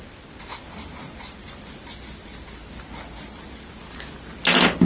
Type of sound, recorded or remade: recorded